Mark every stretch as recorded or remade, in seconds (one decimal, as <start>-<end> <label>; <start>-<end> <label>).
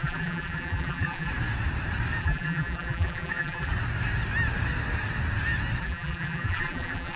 0.0-1.3 remade; 1.3-2.2 recorded; 2.2-3.7 remade; 3.7-5.8 recorded; 5.8-7.2 remade